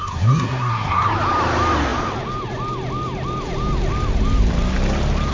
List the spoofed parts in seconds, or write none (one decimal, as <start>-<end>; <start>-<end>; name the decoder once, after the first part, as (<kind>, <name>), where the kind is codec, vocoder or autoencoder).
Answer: 0.0-1.1 (codec, SNAC)